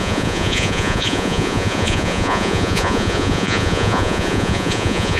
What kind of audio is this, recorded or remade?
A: remade